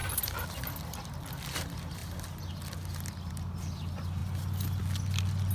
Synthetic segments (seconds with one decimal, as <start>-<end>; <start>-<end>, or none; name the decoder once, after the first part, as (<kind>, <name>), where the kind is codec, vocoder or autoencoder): none